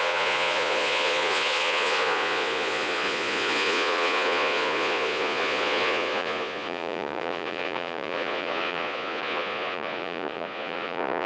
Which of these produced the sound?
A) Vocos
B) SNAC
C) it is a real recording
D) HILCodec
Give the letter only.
A